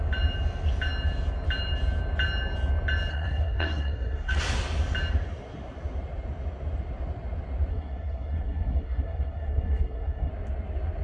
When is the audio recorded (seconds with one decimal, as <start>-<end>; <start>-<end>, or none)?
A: 0.0-3.1; 4.4-7.7; 10.3-11.0